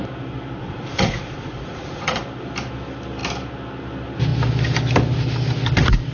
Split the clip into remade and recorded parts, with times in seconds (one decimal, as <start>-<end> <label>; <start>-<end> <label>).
0.0-0.6 recorded; 0.6-2.2 remade; 2.2-6.1 recorded